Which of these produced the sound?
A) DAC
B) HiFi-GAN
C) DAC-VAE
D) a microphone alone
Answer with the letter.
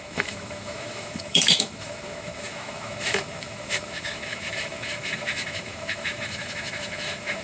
C